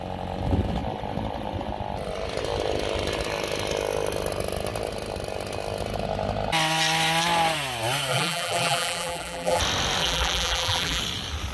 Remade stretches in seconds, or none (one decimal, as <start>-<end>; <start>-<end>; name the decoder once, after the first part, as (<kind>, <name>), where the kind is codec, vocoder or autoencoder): 8.1-9.6 (vocoder, BigVGAN v2); 10.0-11.0